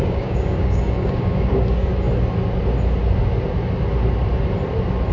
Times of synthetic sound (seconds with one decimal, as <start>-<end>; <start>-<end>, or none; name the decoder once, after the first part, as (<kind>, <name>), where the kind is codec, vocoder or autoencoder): 0.0-1.9 (codec, DAC)